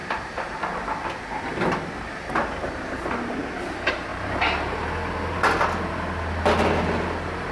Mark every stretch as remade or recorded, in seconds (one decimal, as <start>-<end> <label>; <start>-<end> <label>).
0.0-1.0 remade; 1.0-4.1 recorded; 4.1-4.7 remade; 4.7-7.5 recorded